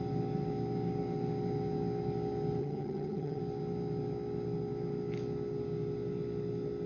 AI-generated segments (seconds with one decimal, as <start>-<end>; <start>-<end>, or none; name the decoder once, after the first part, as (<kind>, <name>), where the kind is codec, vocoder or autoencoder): 2.6-3.4 (vocoder, HiFi-GAN)